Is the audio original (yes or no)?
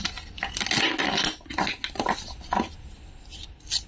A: yes